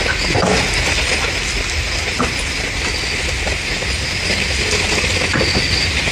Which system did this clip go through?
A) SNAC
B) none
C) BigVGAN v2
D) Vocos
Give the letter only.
B